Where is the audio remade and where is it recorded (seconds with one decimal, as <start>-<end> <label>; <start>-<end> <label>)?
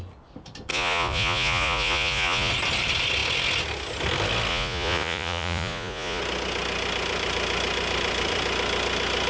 0.0-0.7 recorded; 0.7-2.5 remade; 2.5-4.5 recorded; 4.5-6.2 remade; 6.2-9.3 recorded